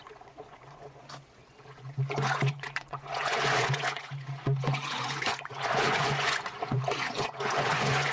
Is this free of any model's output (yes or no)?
no